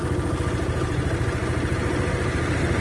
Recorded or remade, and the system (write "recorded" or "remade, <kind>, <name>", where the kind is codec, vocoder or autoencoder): recorded